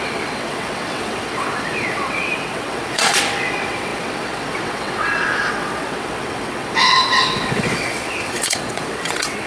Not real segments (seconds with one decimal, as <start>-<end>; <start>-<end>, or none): 0.0-9.5